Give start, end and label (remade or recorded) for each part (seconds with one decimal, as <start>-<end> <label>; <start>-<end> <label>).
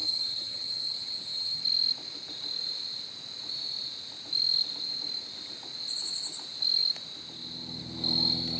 0.0-1.6 remade; 1.6-8.6 recorded